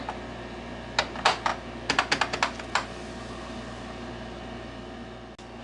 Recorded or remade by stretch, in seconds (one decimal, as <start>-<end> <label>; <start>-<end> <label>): 0.0-5.6 recorded